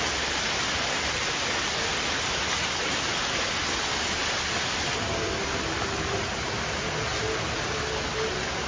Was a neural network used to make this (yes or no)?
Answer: no